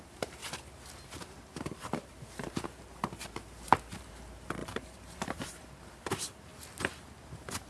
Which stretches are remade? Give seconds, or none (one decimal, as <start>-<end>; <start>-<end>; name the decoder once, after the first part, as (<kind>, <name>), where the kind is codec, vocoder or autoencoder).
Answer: 0.0-0.4 (vocoder, BigVGAN v2); 1.5-6.5